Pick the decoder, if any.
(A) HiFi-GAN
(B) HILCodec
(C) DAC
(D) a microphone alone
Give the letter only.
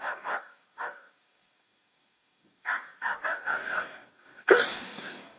C